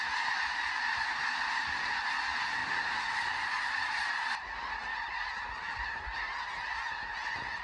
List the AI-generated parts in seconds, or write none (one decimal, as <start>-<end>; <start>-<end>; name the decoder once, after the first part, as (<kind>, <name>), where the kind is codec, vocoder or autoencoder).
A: 2.6-3.3 (vocoder, BigVGAN v2)